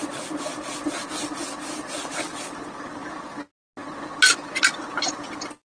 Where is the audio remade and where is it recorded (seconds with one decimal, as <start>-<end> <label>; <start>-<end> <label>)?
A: 0.0-5.7 recorded